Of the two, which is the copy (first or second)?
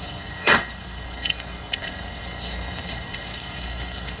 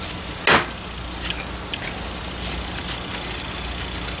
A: first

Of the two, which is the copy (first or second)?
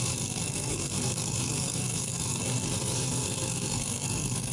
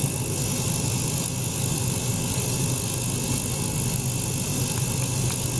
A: first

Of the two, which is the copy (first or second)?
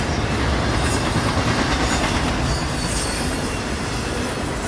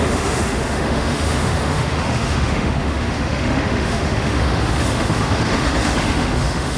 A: second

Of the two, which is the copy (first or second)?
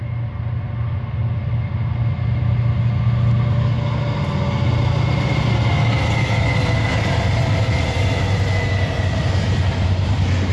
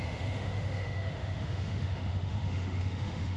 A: second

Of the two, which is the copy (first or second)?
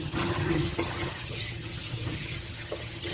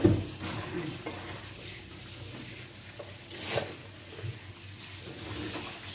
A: first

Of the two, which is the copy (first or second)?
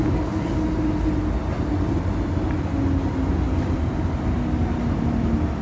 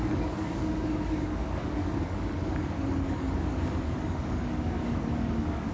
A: second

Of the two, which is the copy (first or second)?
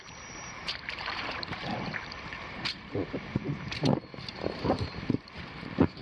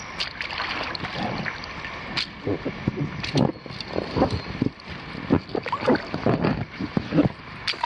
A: first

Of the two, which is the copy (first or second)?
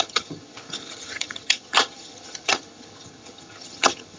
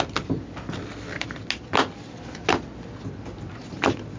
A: first